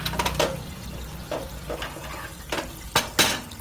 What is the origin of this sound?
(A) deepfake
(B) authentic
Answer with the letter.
B